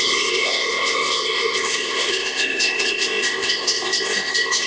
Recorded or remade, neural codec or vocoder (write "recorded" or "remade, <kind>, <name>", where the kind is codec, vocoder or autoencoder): remade, codec, ZipCodec